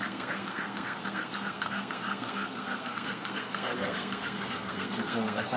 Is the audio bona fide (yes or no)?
no